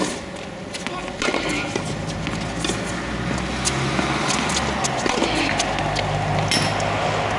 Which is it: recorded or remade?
recorded